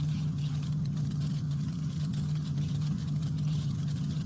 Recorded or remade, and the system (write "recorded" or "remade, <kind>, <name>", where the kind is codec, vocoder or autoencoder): remade, vocoder, HiFi-GAN